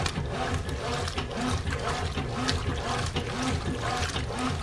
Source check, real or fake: real